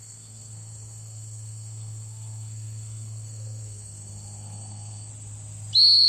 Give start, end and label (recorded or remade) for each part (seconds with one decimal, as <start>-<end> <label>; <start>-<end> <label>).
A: 0.0-5.1 remade; 5.1-6.1 recorded